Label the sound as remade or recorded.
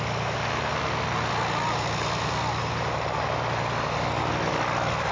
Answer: recorded